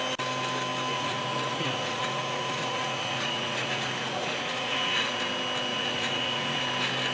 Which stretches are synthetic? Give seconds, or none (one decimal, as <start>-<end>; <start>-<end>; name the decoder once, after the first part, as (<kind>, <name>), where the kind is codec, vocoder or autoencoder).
0.9-5.2 (vocoder, Vocos); 5.7-6.6